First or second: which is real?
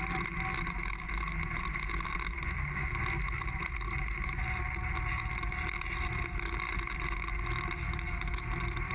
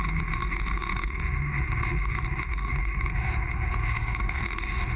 first